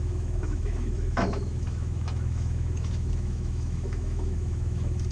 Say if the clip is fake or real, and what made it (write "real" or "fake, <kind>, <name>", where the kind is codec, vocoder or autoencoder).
fake, autoencoder, DAC-VAE